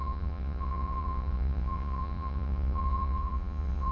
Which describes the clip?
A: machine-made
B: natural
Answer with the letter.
A